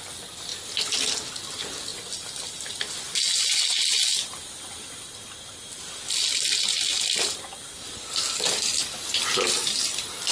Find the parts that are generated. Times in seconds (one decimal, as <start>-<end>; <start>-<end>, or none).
none